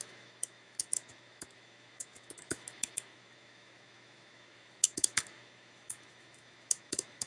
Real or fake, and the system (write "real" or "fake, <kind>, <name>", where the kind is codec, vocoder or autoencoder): fake, autoencoder, DAC-VAE